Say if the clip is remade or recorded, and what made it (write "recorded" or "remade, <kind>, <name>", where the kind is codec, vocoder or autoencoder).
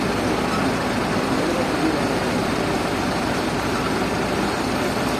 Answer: remade, vocoder, BigVGAN v2